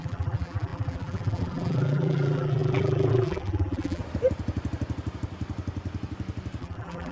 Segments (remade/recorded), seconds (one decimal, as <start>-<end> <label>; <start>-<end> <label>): 0.0-4.0 remade; 4.0-6.6 recorded; 6.6-7.1 remade